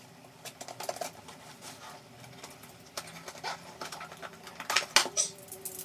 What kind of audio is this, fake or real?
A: real